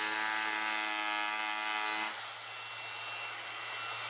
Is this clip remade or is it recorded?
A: recorded